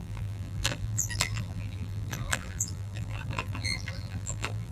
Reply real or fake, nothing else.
fake